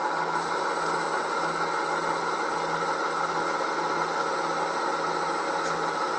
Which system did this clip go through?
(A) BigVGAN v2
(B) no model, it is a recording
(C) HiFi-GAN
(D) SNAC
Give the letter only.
B